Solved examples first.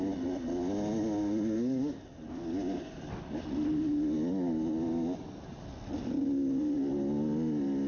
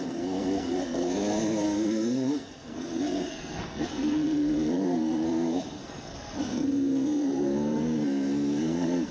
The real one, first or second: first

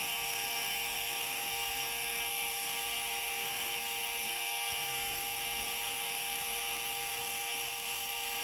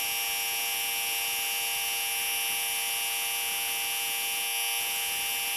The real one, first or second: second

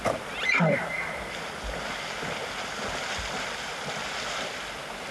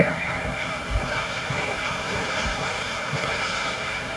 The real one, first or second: first